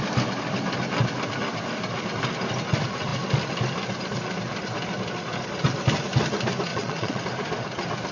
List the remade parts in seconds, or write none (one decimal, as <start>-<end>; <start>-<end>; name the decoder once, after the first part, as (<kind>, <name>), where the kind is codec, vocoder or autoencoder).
6.7-7.2 (vocoder, Vocos)